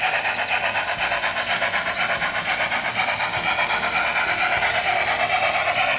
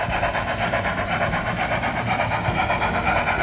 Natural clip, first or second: first